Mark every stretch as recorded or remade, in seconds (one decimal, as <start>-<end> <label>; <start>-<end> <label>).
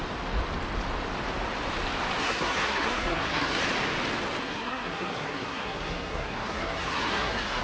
0.0-2.2 recorded; 2.2-3.6 remade; 3.6-4.4 recorded; 4.4-7.6 remade